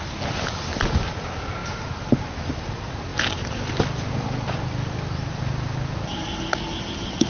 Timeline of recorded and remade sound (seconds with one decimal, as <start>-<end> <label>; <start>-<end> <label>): 0.0-7.3 recorded